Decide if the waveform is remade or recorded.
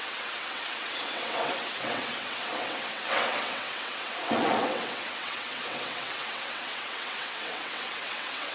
remade